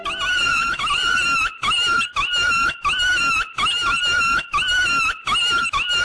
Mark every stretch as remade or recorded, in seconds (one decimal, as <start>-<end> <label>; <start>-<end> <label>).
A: 0.0-6.0 recorded